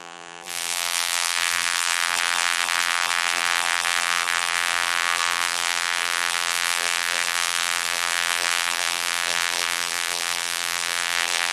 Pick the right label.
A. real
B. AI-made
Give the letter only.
B